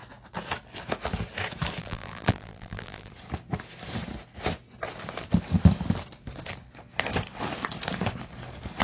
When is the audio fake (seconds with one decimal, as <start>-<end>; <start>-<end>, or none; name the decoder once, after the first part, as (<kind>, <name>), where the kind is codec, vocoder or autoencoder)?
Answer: 1.8-3.1 (vocoder, BigVGAN v2)